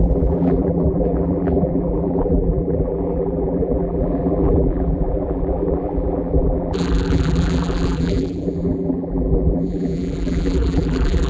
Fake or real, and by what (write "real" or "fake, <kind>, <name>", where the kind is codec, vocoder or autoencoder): fake, vocoder, BigVGAN v2